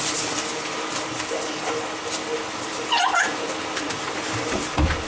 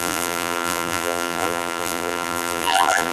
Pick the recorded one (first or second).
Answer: first